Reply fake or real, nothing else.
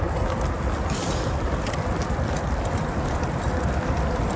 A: real